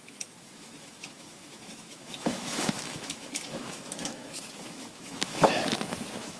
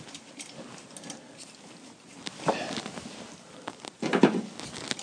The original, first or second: second